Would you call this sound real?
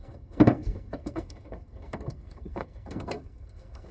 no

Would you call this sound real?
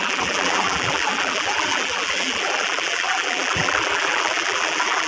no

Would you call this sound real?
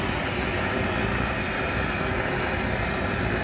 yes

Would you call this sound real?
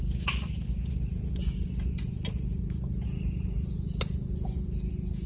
yes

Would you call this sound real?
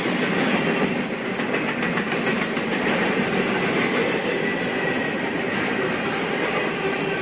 yes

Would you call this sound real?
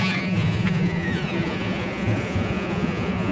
no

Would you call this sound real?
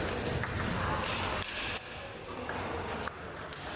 yes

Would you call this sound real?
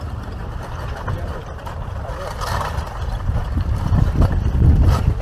yes